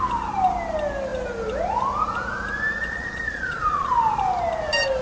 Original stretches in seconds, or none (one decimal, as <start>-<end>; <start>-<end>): 0.0-2.7; 3.9-5.0